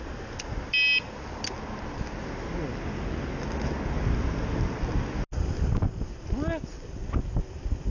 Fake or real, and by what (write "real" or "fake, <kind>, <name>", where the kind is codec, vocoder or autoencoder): real